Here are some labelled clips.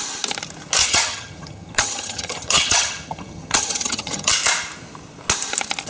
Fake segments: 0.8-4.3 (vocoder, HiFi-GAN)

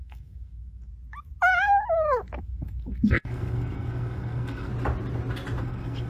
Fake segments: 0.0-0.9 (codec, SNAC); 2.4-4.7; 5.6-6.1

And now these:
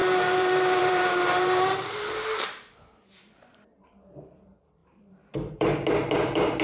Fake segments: 0.0-6.6 (vocoder, BigVGAN v2)

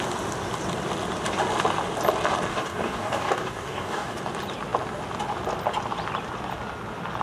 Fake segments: 2.5-4.2 (codec, DAC)

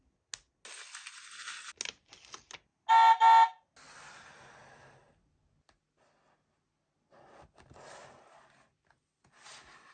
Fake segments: none

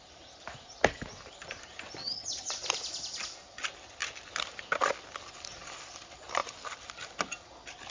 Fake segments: 2.0-2.5 (vocoder, HiFi-GAN)

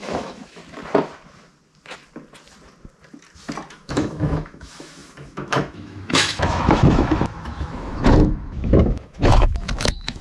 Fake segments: 0.0-0.6 (autoencoder, DAC-VAE); 3.7-10.2

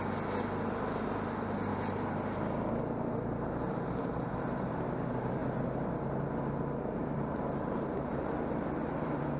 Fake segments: 1.7-2.8 (vocoder, BigVGAN v2); 7.0-8.3